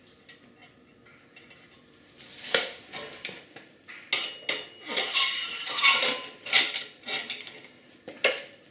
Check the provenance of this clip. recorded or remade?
recorded